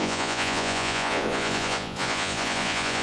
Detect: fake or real fake